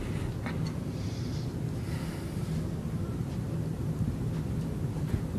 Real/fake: real